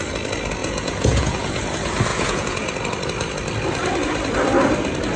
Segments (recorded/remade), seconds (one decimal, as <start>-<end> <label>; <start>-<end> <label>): 0.0-0.6 recorded; 0.6-1.6 remade; 1.6-2.1 recorded; 2.1-2.7 remade; 2.7-5.2 recorded